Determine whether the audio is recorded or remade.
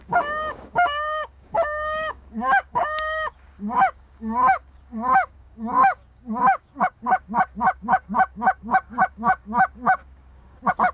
remade